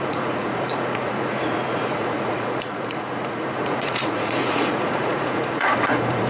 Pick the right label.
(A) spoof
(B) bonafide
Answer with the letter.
A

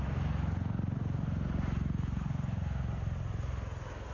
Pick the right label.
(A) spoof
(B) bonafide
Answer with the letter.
B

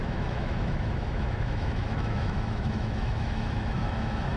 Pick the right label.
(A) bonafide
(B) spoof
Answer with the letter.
B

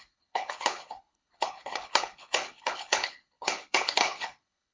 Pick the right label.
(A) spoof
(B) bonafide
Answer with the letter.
A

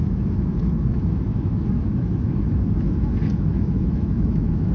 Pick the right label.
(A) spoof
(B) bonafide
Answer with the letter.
A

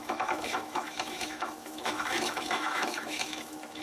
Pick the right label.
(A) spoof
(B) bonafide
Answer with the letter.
A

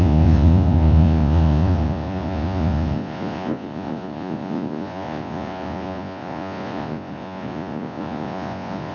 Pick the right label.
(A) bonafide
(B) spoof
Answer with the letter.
B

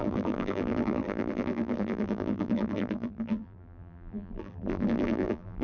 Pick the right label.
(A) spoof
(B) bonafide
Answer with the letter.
A